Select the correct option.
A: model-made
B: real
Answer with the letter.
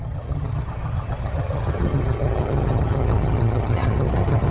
A